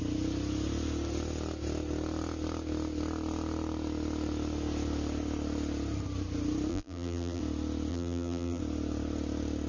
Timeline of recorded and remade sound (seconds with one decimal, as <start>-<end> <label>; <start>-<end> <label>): 0.0-6.7 recorded; 6.7-7.4 remade; 7.4-7.9 recorded; 7.9-8.6 remade; 8.6-9.7 recorded